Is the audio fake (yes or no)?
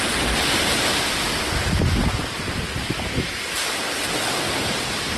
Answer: no